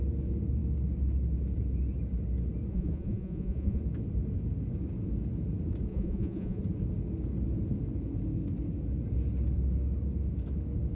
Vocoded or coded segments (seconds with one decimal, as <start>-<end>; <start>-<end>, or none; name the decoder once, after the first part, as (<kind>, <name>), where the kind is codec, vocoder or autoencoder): 2.7-3.8 (vocoder, Vocos); 5.9-6.6